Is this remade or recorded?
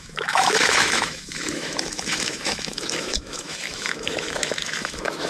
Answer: remade